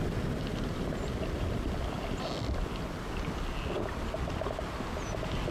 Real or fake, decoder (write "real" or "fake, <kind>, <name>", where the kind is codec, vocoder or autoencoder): real